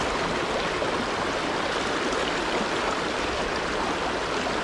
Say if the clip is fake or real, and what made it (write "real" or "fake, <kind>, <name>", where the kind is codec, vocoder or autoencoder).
real